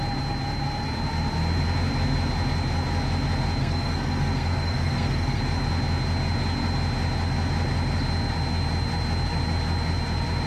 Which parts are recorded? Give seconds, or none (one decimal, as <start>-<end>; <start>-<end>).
0.0-3.6; 5.4-10.5